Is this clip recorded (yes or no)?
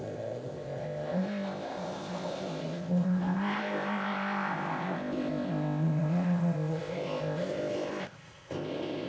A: no